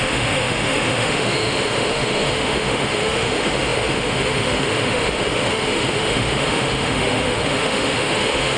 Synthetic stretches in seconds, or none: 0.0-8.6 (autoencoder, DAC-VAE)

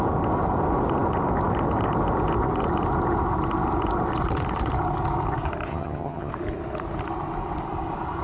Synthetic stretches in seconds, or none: 5.7-6.3 (vocoder, HiFi-GAN)

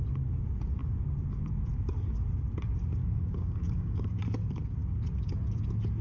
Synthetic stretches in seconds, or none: 3.0-4.2 (codec, DAC)

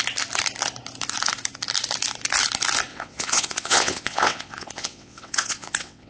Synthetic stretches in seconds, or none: 2.9-6.1 (vocoder, WaveNeXt)

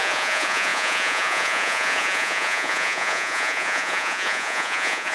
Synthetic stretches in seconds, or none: 0.0-5.1 (vocoder, Vocos)